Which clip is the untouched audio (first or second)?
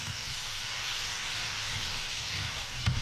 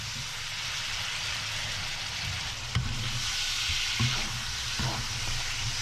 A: second